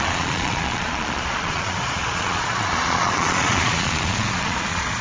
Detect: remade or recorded remade